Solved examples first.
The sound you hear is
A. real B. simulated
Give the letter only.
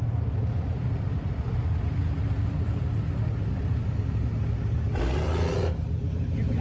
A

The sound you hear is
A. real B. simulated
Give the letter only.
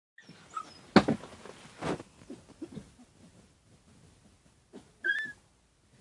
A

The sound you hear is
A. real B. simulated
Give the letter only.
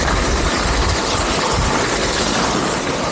A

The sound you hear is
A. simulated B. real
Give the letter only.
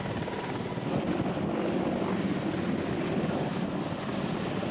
B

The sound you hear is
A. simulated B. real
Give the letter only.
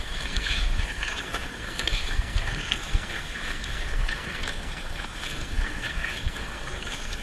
A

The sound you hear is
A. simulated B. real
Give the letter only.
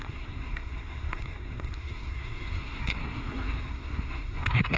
A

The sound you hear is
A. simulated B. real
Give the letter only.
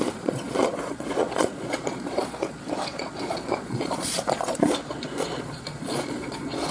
A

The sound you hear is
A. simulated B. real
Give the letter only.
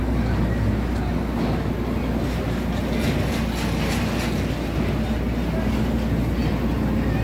B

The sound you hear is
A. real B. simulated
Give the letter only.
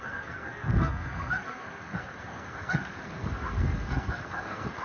B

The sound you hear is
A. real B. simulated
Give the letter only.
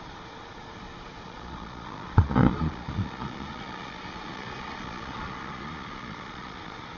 B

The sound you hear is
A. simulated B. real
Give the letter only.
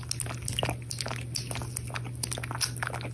B